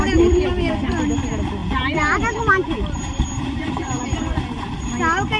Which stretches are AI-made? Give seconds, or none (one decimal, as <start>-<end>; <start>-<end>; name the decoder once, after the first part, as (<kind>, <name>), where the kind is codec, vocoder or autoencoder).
1.6-4.8 (vocoder, BigVGAN v2)